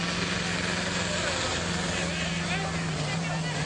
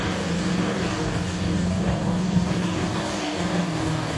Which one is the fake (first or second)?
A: second